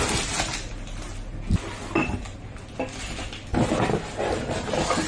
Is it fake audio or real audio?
real